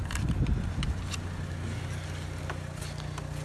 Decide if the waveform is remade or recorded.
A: recorded